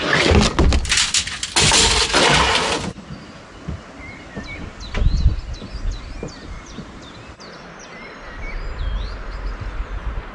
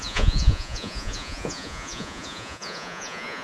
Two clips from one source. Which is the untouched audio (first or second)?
first